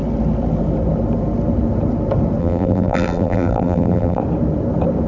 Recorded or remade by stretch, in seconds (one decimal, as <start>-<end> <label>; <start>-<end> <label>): 0.0-2.4 recorded; 2.4-4.2 remade; 4.2-5.1 recorded